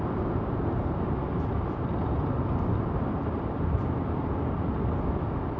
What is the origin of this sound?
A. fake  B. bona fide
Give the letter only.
B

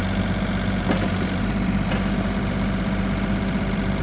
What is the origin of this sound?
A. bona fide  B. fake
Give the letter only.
B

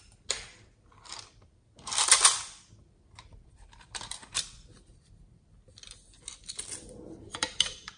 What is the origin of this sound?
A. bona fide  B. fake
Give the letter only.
B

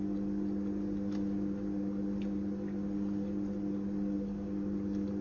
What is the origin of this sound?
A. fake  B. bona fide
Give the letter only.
B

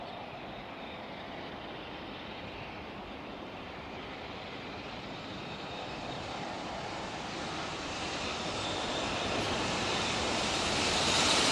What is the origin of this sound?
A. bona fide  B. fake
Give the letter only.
B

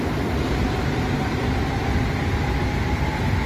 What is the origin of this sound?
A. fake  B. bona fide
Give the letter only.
B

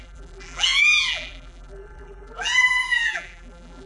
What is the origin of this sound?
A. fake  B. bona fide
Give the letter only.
A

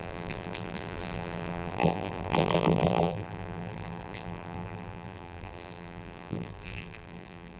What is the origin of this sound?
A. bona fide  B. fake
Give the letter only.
B